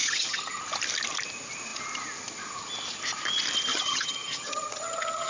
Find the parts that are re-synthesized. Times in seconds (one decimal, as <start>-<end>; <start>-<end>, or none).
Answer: 0.0-0.6; 3.7-5.3